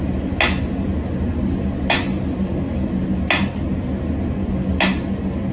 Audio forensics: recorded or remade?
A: recorded